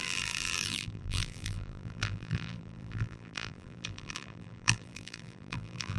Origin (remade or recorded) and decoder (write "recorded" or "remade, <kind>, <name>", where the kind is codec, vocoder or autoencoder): remade, vocoder, BigVGAN v2